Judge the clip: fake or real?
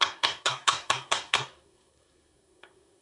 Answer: fake